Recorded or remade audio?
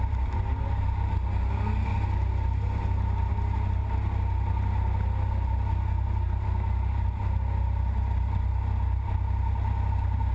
recorded